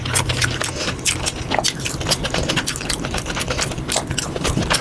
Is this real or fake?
real